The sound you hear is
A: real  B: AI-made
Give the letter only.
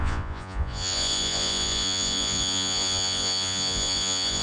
B